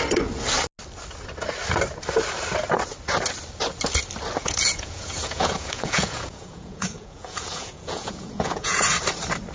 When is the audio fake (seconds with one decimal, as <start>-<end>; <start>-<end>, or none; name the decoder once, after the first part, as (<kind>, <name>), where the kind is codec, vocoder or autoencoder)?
4.4-8.8 (vocoder, Vocos)

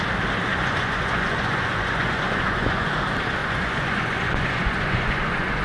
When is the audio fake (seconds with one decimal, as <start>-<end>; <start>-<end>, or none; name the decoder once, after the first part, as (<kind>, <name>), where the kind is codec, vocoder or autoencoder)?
0.5-2.9 (vocoder, Vocos); 3.4-5.6

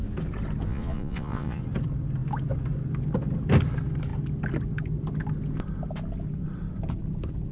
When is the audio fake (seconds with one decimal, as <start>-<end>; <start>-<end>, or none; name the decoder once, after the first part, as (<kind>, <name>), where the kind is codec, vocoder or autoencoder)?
0.7-1.6 (vocoder, Vocos)

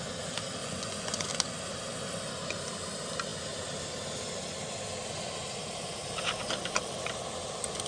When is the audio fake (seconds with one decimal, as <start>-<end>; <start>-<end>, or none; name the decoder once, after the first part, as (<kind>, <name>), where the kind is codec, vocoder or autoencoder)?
0.6-1.3 (vocoder, Vocos)

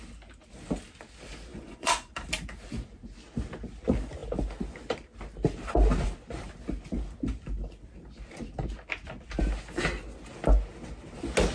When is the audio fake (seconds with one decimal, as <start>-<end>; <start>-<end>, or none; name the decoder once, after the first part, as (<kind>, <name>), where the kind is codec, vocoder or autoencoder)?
1.5-2.1 (vocoder, Vocos)

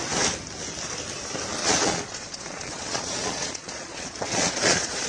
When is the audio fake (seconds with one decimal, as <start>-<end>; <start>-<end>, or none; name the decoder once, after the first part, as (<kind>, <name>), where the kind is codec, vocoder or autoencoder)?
1.6-5.1 (vocoder, Vocos)

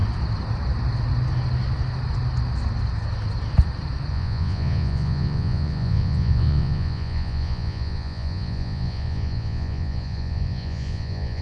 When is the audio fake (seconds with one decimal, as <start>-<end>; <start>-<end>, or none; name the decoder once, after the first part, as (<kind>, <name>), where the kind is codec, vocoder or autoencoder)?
4.1-11.4 (vocoder, Vocos)

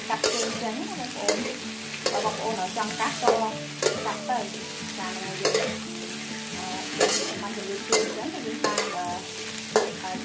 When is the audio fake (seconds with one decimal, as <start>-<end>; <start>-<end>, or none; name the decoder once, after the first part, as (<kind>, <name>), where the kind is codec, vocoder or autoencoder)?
6.5-7.3 (vocoder, Vocos)